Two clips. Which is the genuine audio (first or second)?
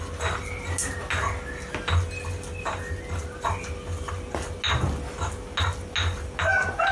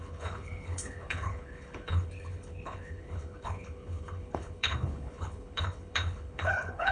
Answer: first